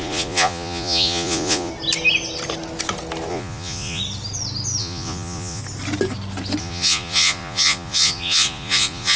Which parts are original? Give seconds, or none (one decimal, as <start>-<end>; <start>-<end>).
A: 1.7-3.3; 4.0-4.8; 5.6-6.6